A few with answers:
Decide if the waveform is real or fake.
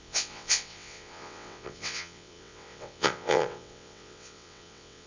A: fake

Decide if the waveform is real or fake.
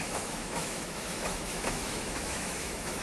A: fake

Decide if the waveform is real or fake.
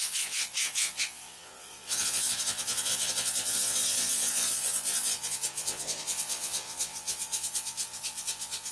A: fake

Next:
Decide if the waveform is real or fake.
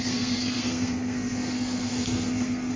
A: fake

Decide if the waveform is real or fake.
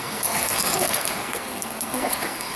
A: fake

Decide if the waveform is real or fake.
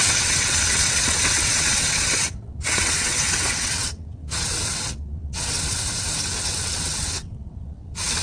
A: fake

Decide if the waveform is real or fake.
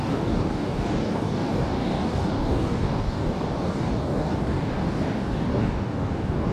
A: fake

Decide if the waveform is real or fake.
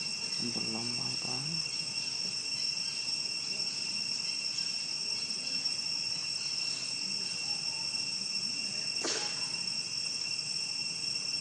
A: real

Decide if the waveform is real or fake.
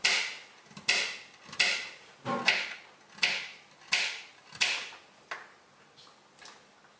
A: real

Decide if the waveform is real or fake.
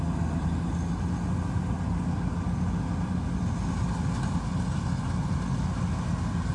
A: real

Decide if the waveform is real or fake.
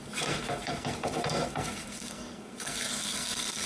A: fake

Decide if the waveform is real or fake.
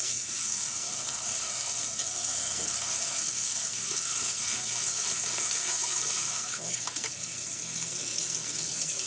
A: fake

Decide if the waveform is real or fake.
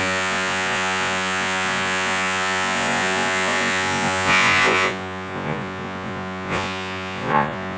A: fake